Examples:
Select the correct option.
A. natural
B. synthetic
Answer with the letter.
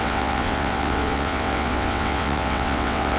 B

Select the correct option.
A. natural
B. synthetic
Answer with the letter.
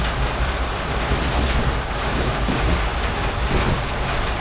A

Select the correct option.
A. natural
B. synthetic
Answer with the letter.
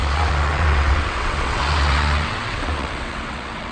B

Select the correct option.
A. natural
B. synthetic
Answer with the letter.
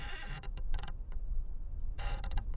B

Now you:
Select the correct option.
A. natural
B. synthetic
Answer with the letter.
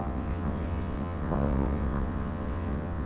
B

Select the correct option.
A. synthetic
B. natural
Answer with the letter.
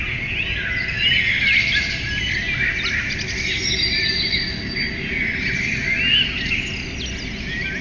B